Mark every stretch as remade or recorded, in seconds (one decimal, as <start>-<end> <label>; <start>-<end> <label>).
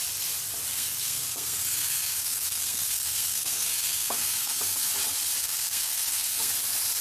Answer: 0.0-0.7 recorded; 0.7-4.9 remade; 4.9-5.4 recorded; 5.4-6.5 remade; 6.5-7.0 recorded